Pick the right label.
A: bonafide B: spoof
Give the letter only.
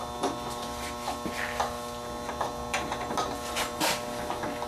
A